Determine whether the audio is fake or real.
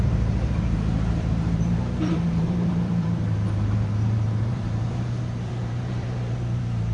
fake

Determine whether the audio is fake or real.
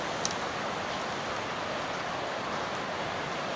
real